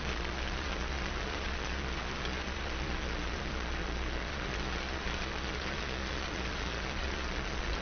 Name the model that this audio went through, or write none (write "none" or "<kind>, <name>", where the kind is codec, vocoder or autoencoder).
vocoder, Vocos